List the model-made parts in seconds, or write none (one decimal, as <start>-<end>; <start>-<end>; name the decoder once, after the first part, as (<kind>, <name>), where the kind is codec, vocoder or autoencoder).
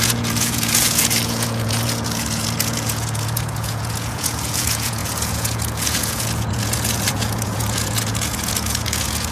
0.0-9.3 (vocoder, Vocos)